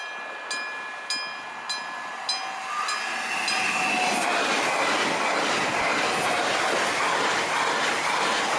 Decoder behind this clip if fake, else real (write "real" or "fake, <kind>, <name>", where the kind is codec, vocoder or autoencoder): real